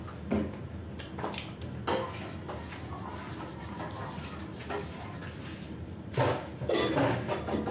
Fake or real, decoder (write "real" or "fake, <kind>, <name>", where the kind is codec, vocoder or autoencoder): real